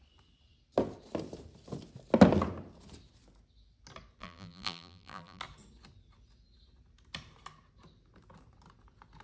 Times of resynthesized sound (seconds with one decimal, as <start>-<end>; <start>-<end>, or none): 4.2-5.4